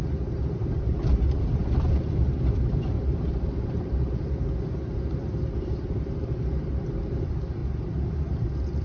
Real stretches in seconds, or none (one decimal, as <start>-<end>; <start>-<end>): 7.6-8.1